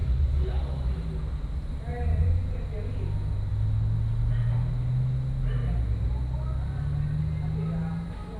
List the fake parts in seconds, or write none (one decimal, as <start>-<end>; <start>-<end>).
0.0-0.6; 1.9-2.4